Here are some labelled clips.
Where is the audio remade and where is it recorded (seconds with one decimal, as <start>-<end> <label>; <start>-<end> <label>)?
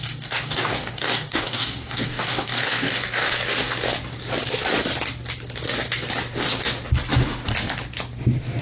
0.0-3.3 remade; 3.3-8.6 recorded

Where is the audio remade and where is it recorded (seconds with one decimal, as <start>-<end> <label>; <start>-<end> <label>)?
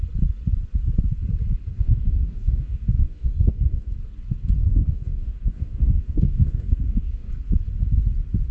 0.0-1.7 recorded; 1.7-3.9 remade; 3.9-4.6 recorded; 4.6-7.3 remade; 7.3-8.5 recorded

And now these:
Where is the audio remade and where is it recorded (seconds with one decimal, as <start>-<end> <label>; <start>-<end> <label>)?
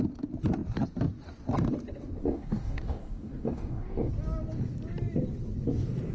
0.0-2.2 recorded; 2.2-4.1 remade; 4.1-6.1 recorded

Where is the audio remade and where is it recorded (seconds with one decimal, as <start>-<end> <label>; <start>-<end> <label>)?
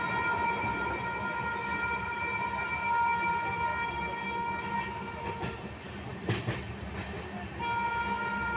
0.0-3.7 recorded; 3.7-4.6 remade; 4.6-8.6 recorded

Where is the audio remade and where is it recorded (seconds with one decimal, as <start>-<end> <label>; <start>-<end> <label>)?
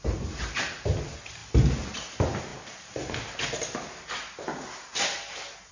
0.0-5.7 recorded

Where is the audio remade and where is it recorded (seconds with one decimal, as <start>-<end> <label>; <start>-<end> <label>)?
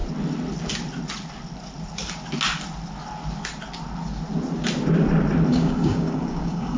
0.0-5.5 recorded; 5.5-6.8 remade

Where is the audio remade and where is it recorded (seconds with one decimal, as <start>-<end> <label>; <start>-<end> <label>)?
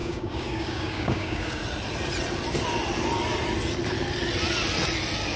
0.0-1.6 remade; 1.6-5.4 recorded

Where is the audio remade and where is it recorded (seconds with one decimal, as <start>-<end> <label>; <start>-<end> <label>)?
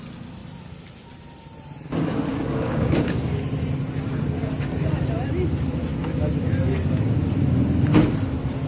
0.0-2.3 recorded; 2.3-3.4 remade; 3.4-8.7 recorded